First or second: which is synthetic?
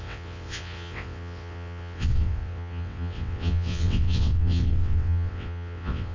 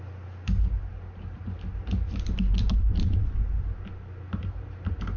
first